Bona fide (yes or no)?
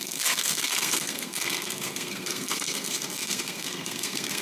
no